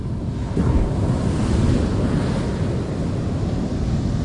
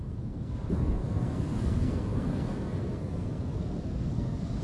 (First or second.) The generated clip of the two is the second